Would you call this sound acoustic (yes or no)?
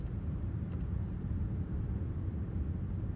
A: yes